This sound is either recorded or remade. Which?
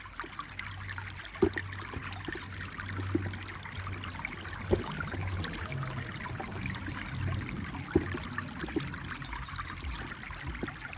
recorded